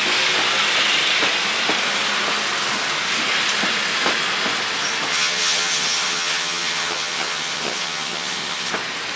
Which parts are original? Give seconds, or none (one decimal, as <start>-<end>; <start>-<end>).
0.0-5.1; 8.7-9.2